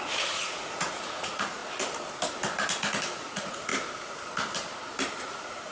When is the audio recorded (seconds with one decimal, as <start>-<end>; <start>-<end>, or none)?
1.6-3.2; 3.7-5.2